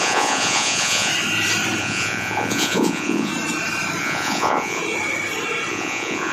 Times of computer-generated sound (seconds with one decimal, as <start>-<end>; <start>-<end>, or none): 0.0-1.1; 1.8-3.3; 4.0-4.8; 5.7-6.3